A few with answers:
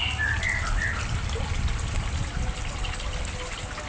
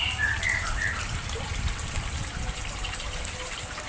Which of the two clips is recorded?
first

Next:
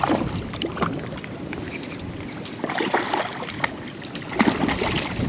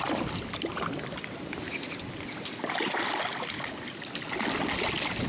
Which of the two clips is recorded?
second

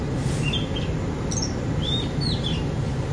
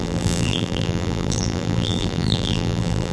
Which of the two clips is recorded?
first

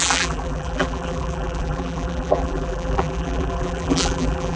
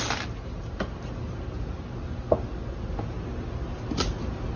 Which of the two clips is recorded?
second